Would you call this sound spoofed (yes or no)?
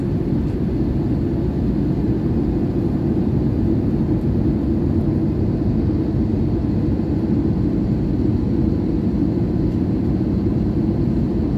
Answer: no